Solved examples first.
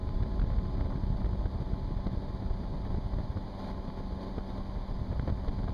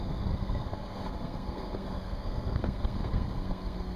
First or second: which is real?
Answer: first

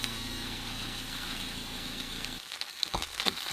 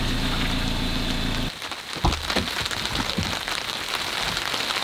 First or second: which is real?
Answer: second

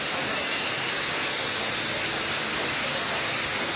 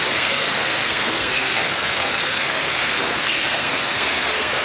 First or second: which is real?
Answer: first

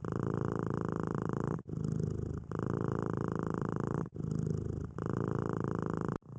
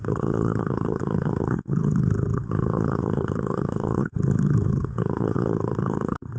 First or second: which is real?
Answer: first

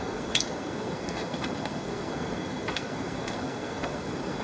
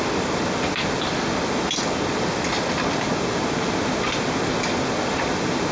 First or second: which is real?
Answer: second